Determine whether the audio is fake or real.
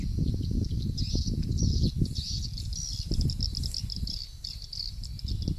real